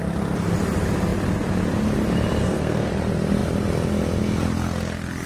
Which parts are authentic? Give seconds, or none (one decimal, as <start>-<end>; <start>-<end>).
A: 0.0-2.4; 2.9-5.3